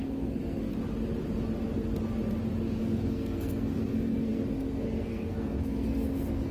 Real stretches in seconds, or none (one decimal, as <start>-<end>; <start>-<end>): 0.7-2.8